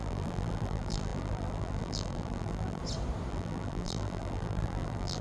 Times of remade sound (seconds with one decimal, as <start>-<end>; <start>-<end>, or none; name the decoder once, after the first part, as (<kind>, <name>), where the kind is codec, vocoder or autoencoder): 0.0-2.8 (vocoder, BigVGAN v2); 3.3-5.2